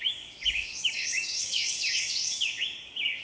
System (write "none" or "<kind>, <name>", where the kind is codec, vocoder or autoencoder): codec, DAC